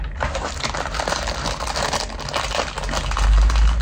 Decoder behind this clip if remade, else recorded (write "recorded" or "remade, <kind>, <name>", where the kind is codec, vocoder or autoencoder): recorded